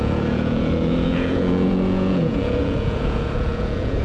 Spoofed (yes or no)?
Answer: yes